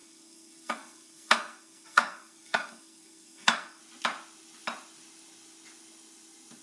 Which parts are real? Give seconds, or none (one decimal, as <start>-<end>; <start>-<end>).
3.8-6.6